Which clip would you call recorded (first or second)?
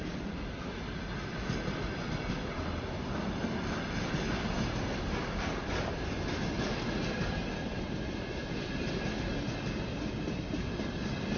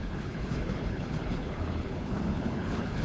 first